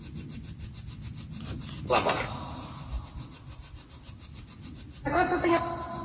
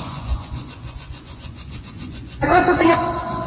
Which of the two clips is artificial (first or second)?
second